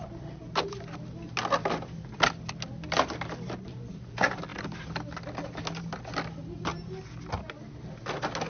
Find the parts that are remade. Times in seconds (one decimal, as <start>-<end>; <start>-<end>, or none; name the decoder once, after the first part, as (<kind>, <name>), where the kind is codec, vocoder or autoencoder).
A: none